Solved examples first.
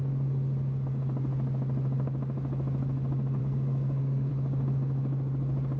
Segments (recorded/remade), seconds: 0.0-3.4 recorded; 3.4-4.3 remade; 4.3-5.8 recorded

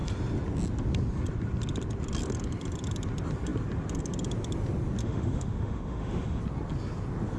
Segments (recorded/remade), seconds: 0.0-5.0 recorded; 5.0-6.4 remade; 6.4-7.4 recorded

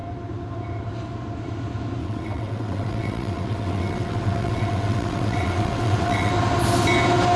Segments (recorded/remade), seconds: 0.0-2.0 recorded; 2.0-6.3 remade; 6.3-7.4 recorded

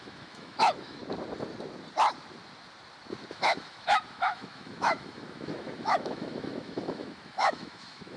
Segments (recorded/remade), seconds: 0.0-1.0 remade; 1.0-3.3 recorded; 3.3-8.2 remade

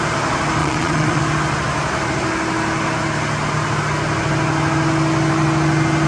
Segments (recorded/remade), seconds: 0.0-0.6 recorded; 0.6-1.2 remade; 1.2-6.1 recorded